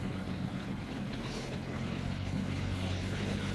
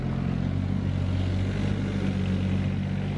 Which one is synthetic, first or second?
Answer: first